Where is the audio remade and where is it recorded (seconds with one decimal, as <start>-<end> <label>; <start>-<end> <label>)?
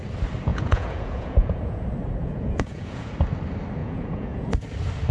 0.0-0.5 recorded; 0.5-1.8 remade; 1.8-2.2 recorded; 2.2-3.1 remade; 3.1-3.8 recorded; 3.8-4.5 remade; 4.5-5.1 recorded